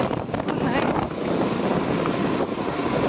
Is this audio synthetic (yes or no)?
no